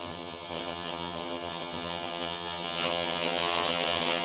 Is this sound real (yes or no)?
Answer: no